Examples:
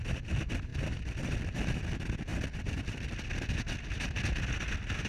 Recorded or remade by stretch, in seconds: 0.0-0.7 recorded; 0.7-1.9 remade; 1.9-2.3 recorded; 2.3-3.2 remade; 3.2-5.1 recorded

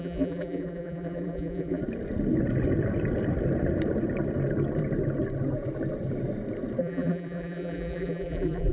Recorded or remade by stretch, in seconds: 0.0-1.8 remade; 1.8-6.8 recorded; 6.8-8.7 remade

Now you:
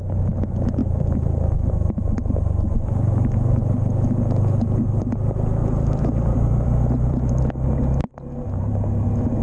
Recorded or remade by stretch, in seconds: 0.0-5.6 recorded; 5.6-8.2 remade; 8.2-9.4 recorded